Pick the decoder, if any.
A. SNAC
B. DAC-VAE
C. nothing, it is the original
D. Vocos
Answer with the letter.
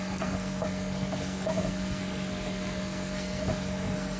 A